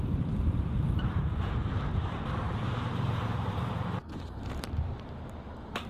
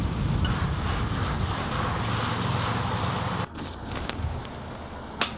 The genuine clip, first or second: second